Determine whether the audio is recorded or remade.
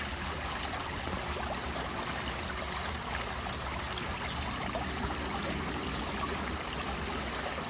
recorded